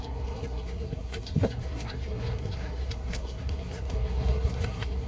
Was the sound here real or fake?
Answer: fake